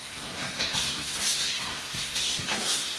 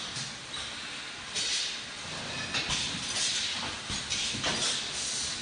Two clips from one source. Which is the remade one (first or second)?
first